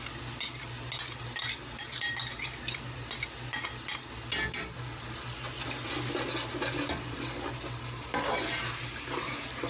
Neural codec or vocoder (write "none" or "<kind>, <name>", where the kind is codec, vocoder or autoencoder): none